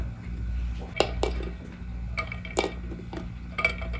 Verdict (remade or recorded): recorded